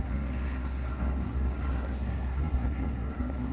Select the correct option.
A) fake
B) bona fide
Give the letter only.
A